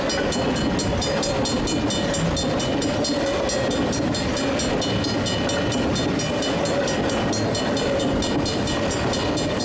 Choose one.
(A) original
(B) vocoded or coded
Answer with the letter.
A